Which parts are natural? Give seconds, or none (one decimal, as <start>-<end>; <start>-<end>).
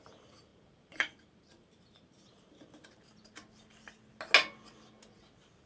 0.0-0.5; 3.7-5.7